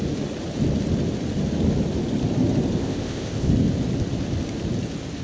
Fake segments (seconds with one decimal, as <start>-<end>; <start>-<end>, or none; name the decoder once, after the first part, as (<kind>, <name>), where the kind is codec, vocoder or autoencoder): 2.8-3.5 (codec, ZipCodec)

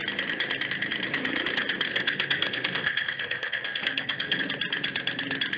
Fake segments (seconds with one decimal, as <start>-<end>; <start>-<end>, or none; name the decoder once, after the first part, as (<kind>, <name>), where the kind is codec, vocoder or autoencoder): 1.9-4.4 (codec, SNAC)

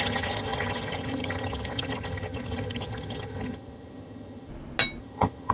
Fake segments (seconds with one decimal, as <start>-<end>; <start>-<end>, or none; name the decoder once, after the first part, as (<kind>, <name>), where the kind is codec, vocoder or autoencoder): 0.0-4.5 (vocoder, HiFi-GAN); 5.0-5.5

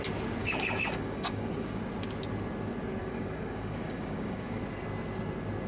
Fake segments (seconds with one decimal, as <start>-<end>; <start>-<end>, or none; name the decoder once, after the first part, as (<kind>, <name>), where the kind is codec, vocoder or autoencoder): 0.4-1.8 (codec, DAC); 3.0-4.6